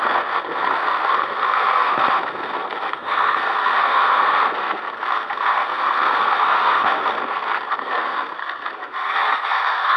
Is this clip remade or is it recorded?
remade